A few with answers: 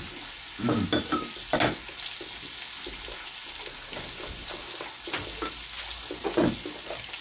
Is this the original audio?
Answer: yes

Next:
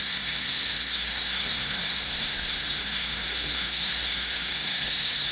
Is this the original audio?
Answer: no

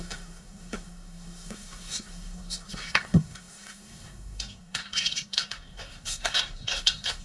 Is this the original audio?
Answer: no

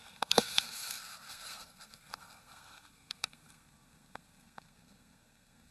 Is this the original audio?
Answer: no